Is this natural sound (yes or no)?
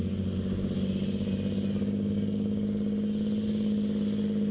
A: yes